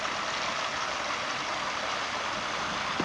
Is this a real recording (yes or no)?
yes